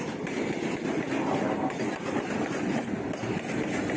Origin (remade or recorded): recorded